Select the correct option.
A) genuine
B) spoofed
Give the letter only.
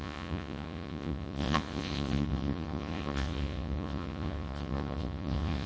B